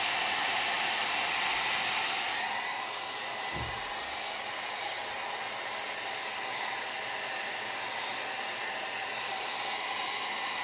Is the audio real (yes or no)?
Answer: yes